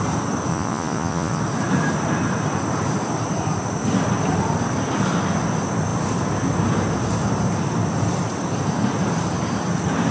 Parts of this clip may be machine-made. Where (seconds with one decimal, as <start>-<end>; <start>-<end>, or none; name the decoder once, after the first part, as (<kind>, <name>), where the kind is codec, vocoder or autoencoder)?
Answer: 0.5-1.4 (vocoder, Vocos)